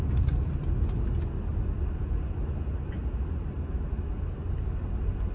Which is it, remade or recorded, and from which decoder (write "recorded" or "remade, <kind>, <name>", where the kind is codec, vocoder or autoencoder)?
recorded